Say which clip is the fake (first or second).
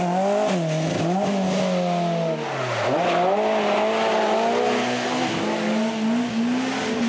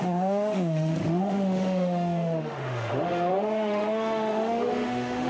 second